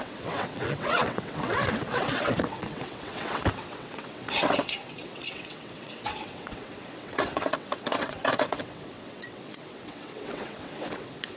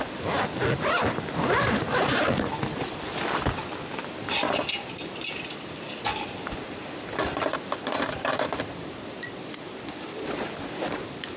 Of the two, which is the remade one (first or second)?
first